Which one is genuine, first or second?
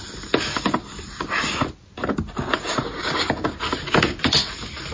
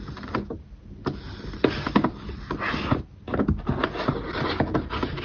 second